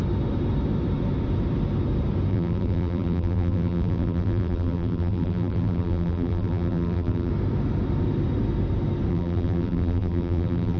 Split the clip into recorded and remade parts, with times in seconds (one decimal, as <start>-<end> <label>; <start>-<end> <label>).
0.0-2.3 recorded; 2.3-7.3 remade; 7.3-9.1 recorded; 9.1-10.8 remade